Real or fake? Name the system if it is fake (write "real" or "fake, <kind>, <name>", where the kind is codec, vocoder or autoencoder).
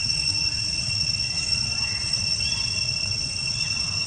fake, vocoder, WaveNeXt